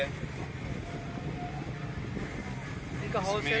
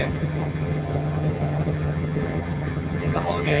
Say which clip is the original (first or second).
first